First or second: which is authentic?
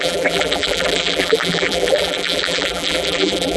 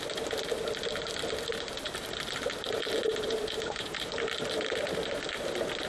second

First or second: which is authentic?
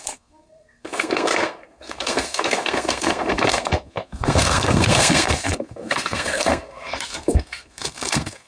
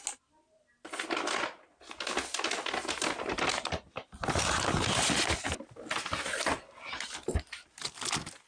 second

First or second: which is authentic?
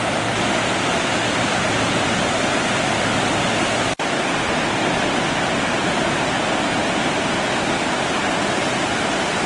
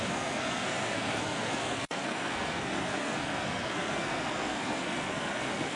first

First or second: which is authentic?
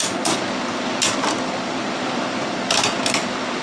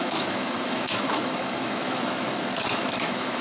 first